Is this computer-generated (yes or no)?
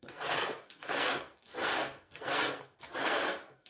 yes